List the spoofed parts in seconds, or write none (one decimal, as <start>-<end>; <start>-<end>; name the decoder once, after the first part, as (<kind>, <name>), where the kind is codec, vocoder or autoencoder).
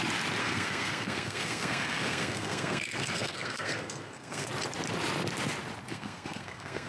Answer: 0.4-4.5 (codec, SNAC); 5.9-6.9